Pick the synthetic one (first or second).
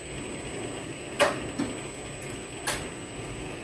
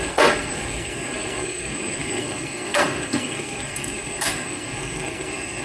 second